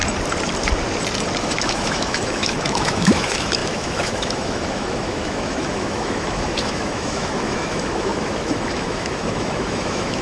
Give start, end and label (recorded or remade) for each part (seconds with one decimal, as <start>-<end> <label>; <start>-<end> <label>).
0.0-1.4 recorded; 1.4-10.2 remade